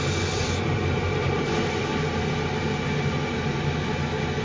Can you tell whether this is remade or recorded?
recorded